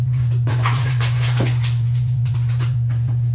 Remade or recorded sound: remade